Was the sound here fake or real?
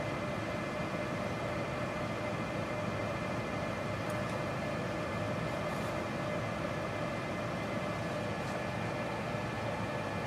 real